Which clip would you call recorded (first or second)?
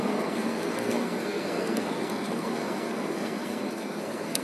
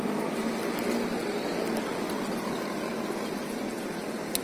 second